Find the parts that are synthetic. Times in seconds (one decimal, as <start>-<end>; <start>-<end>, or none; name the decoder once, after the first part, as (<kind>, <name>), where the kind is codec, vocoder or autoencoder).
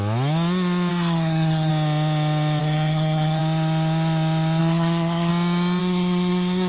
0.9-1.7 (codec, SNAC); 2.6-3.4; 4.6-5.3; 5.8-6.7